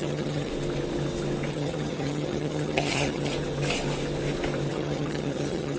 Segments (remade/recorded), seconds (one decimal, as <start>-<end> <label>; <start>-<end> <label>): 0.0-0.5 remade; 0.5-1.5 recorded; 1.5-3.3 remade; 3.3-4.7 recorded; 4.7-5.8 remade